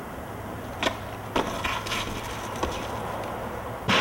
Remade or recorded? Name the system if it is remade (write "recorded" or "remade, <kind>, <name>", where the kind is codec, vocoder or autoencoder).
recorded